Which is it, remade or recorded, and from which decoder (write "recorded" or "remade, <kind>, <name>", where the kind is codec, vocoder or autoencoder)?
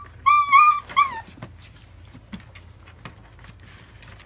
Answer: recorded